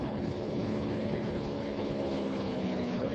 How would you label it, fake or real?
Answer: fake